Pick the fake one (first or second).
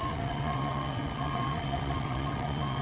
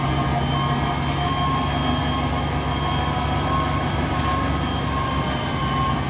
first